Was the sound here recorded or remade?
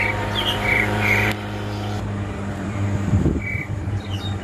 remade